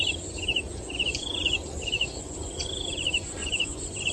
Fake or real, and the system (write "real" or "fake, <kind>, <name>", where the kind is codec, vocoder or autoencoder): fake, vocoder, Vocos